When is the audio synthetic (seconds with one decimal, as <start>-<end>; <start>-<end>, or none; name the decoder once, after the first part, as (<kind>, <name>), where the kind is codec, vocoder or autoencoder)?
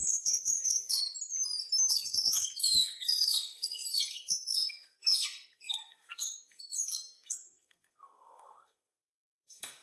0.0-1.0 (codec, SNAC); 1.9-9.8